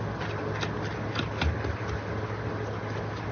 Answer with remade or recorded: recorded